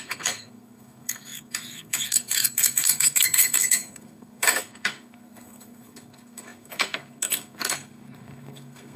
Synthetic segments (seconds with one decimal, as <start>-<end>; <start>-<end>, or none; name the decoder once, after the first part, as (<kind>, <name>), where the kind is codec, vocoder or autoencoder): 0.0-9.0 (codec, SNAC)

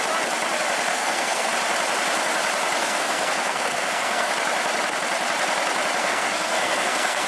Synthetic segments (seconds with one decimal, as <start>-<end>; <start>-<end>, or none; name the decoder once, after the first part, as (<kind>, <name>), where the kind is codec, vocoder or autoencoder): 0.9-1.5 (codec, SNAC); 2.8-4.3; 6.0-7.3

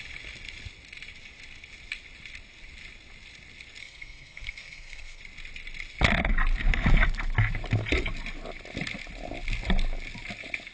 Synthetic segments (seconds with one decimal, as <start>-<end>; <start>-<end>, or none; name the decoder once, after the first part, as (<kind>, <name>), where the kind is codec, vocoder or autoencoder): 3.8-5.2 (codec, SNAC)

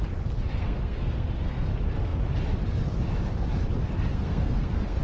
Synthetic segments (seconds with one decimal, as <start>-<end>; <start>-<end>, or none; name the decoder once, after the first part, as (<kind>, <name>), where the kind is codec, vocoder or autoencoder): 0.6-1.7 (codec, SNAC); 4.1-5.0

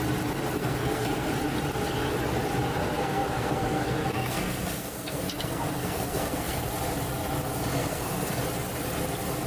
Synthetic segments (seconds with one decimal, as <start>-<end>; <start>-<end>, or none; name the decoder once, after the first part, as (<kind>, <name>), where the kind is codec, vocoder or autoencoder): 0.6-1.3 (codec, SNAC); 2.8-6.7; 7.7-8.4

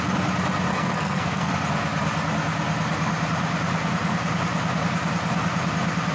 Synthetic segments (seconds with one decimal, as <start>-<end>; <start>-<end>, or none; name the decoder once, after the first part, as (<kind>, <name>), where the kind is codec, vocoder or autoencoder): 0.7-1.5 (codec, SNAC)

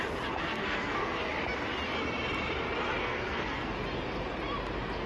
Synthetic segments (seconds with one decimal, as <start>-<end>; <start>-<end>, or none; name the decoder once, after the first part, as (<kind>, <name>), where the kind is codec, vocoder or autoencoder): 0.4-1.2 (codec, SNAC); 3.0-3.7